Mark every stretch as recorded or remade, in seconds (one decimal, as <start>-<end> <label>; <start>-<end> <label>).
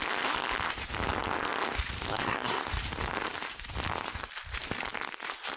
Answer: 0.0-2.1 recorded; 2.1-2.6 remade; 2.6-5.6 recorded